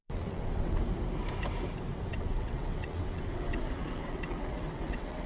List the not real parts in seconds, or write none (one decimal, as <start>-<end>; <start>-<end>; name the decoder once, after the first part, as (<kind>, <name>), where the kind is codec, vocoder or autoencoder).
0.0-0.8 (vocoder, WaveNeXt); 2.1-5.3